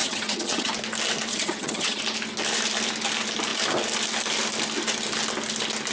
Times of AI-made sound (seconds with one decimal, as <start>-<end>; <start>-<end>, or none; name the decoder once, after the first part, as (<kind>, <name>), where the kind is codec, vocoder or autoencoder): 0.0-0.7 (vocoder, HiFi-GAN); 1.3-2.0